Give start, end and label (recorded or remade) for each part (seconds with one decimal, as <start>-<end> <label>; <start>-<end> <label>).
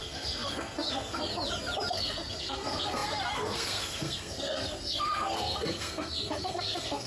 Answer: 0.0-1.3 remade; 1.3-1.9 recorded; 1.9-7.1 remade